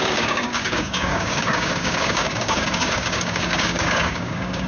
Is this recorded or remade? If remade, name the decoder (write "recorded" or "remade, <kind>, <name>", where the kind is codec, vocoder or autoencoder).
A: remade, codec, DAC